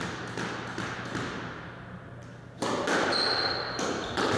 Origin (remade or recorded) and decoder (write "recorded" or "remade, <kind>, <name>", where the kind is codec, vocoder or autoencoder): recorded